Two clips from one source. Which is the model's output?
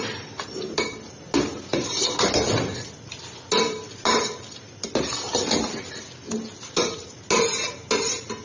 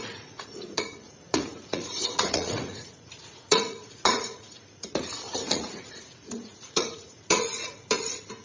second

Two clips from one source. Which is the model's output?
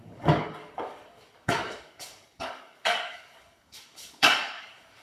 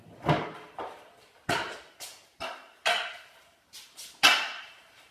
first